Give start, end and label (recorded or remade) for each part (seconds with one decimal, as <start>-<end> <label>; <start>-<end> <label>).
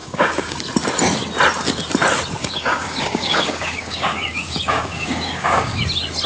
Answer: 0.0-0.6 remade; 0.6-2.4 recorded; 2.4-5.8 remade; 5.8-6.3 recorded